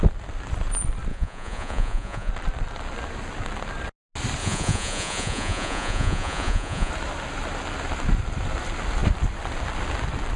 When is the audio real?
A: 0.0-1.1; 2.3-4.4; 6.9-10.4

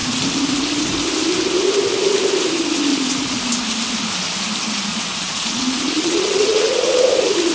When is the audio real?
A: 0.0-2.9; 3.4-4.9; 7.0-7.5